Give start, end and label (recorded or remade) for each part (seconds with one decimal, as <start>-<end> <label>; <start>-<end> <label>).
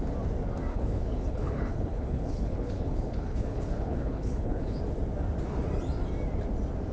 0.0-0.7 recorded; 0.7-4.8 remade; 4.8-6.9 recorded